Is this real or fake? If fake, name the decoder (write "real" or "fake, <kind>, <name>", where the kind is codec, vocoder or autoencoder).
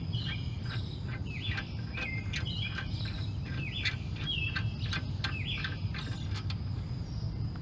real